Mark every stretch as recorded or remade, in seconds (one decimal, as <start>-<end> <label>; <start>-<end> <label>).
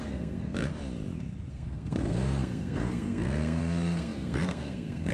0.0-0.7 remade; 0.7-1.5 recorded; 1.5-5.1 remade